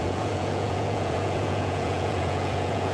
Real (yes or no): no